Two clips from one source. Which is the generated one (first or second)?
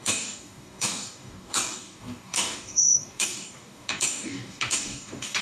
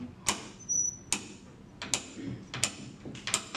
first